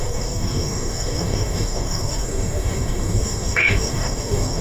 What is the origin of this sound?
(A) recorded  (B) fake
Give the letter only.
B